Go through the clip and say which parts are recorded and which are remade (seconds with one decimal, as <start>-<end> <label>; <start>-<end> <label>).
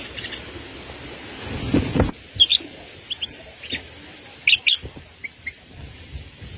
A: 0.0-6.6 recorded